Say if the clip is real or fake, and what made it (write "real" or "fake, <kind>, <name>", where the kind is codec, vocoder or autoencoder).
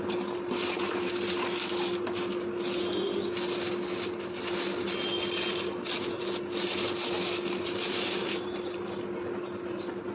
real